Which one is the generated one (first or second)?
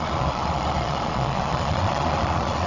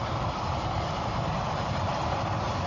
first